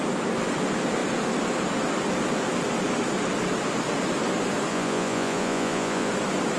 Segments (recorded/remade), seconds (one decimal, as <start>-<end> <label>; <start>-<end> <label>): 0.0-4.7 recorded; 4.7-6.1 remade; 6.1-6.6 recorded